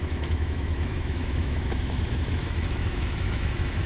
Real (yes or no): no